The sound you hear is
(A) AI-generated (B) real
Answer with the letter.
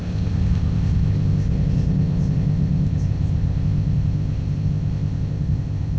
A